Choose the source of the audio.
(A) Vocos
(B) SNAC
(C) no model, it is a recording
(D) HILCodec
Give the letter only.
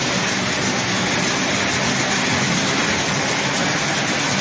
C